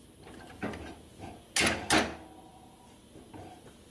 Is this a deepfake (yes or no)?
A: no